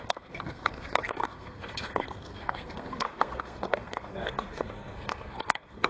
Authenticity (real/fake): fake